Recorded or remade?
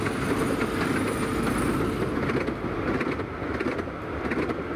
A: recorded